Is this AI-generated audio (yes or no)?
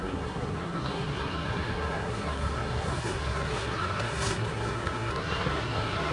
yes